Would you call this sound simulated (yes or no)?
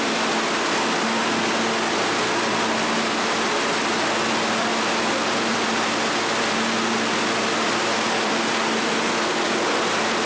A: no